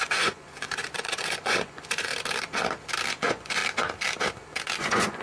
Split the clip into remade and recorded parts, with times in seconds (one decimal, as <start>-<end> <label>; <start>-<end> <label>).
0.0-2.1 remade; 2.1-3.1 recorded; 3.1-3.6 remade; 3.6-4.8 recorded; 4.8-5.2 remade